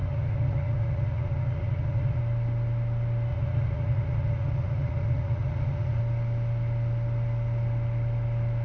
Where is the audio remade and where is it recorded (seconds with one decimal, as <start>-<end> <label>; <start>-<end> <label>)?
0.0-2.2 remade; 2.2-3.3 recorded; 3.3-6.0 remade; 6.0-8.6 recorded